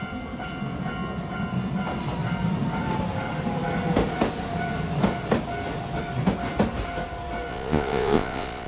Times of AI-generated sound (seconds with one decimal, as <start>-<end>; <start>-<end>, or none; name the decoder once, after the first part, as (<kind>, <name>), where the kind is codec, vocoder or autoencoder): 7.5-8.7 (vocoder, Vocos)

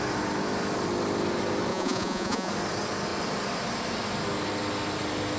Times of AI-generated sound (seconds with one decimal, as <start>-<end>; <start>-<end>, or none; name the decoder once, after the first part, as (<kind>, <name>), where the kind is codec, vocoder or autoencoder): 1.7-2.5 (vocoder, Vocos)